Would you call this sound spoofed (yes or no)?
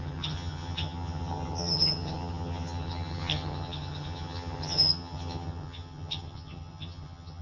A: yes